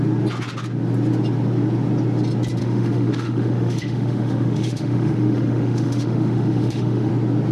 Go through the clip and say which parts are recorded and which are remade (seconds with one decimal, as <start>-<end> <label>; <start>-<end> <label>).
0.0-2.6 recorded; 2.6-7.1 remade; 7.1-7.5 recorded